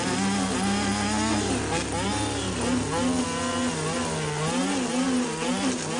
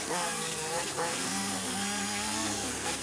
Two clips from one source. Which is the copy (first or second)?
second